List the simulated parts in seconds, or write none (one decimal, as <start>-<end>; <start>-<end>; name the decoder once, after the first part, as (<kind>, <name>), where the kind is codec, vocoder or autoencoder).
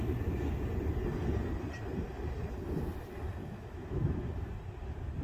3.4-4.5 (autoencoder, DAC-VAE)